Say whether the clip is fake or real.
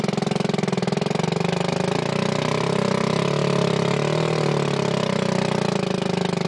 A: real